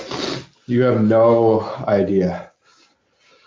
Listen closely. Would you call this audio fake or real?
real